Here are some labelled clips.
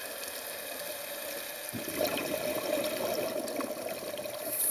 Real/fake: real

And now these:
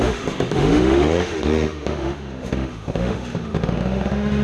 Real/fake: fake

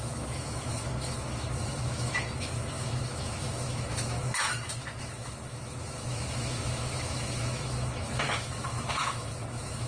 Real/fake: fake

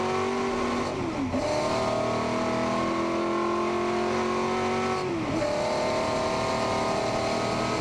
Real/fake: real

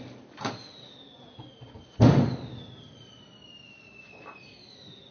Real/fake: real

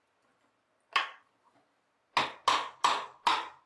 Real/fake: real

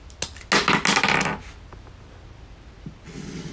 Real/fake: real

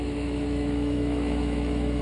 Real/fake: fake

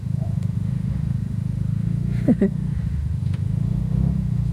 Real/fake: fake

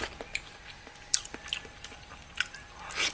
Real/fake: real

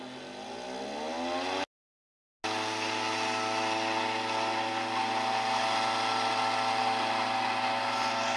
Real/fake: real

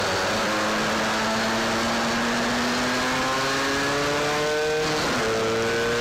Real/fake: real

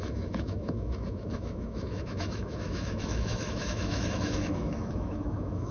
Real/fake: fake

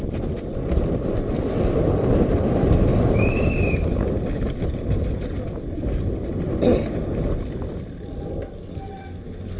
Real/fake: real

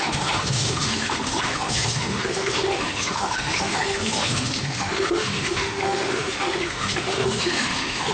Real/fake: fake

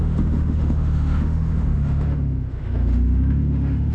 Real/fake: fake